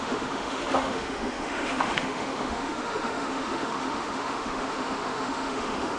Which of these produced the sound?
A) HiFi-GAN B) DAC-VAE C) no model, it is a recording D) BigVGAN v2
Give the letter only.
B